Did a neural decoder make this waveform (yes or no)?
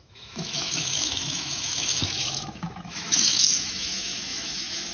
yes